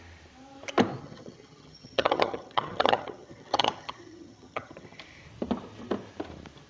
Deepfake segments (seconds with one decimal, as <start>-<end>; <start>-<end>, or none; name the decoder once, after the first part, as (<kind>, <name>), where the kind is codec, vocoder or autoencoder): 1.0-5.0 (vocoder, HiFi-GAN)